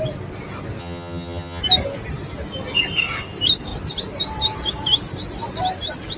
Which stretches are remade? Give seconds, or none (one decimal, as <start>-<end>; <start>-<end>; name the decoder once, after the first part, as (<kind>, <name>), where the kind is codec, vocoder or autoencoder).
0.8-1.6 (vocoder, HiFi-GAN)